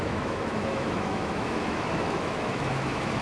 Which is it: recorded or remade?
remade